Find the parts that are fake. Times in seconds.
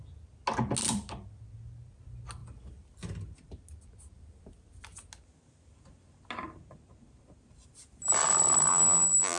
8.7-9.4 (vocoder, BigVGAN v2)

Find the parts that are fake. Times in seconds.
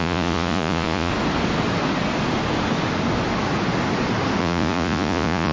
0.0-1.1 (vocoder, Vocos); 4.4-5.5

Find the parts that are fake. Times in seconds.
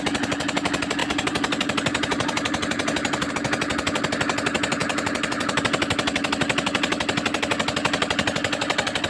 1.0-3.3 (vocoder, BigVGAN v2)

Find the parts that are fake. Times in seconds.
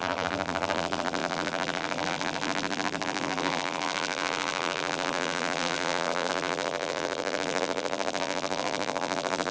0.0-9.5 (vocoder, BigVGAN v2)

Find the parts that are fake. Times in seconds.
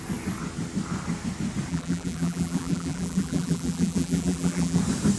1.7-4.8 (vocoder, BigVGAN v2)